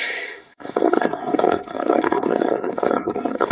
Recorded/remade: remade